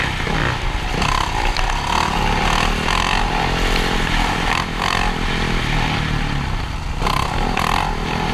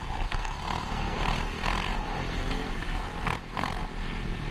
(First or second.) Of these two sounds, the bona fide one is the first